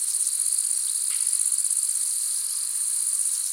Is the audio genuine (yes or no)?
yes